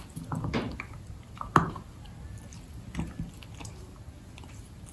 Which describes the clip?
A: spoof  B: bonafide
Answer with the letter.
B